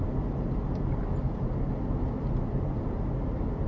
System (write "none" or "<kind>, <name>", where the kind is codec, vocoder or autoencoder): none